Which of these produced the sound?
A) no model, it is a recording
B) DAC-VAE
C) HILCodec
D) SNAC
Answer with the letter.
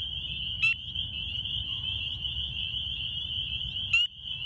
A